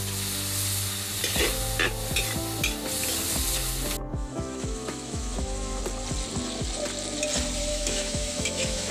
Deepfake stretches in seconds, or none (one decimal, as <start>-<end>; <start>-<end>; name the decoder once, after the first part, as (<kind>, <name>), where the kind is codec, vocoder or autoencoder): 4.1-5.8 (autoencoder, DAC-VAE); 7.7-8.9